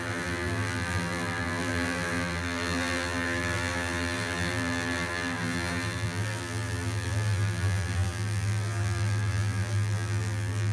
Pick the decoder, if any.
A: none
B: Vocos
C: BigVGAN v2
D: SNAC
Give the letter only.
C